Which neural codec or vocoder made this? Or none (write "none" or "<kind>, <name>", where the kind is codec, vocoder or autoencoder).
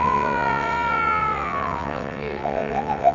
vocoder, WaveNeXt